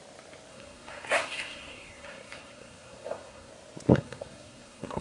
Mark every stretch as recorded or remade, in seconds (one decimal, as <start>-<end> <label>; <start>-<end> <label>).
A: 0.0-0.5 recorded; 0.5-3.5 remade; 3.5-3.9 recorded; 3.9-5.0 remade